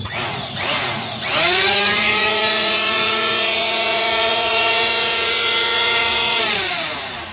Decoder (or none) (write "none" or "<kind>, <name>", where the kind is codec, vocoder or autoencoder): vocoder, Vocos